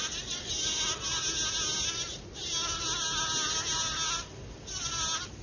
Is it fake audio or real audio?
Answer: real